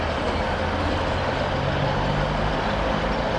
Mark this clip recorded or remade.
recorded